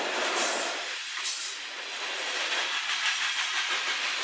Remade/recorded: recorded